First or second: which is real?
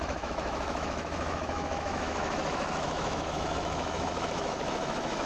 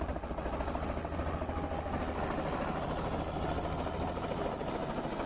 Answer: second